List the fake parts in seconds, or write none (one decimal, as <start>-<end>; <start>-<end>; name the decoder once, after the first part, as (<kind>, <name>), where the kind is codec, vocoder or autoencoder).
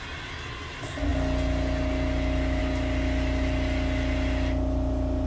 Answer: none